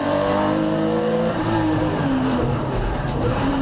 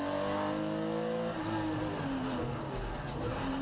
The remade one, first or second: first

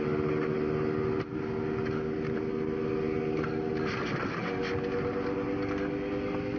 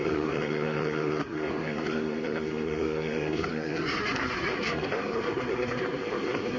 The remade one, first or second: second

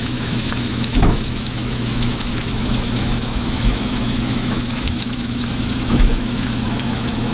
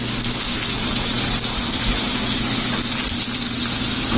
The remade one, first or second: first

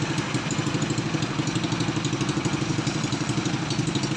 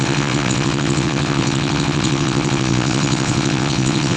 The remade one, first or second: second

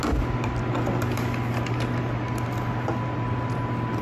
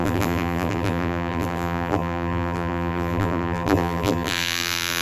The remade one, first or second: second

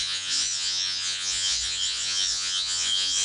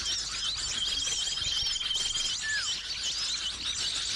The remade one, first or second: first